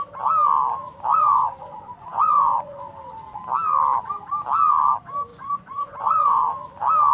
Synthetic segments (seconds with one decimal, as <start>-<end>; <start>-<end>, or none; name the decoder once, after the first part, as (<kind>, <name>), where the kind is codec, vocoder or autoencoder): 1.1-2.9 (vocoder, Vocos); 5.3-6.5